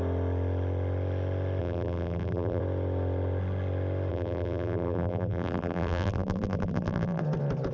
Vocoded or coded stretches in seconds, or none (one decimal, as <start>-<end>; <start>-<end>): 1.6-2.6; 4.1-7.2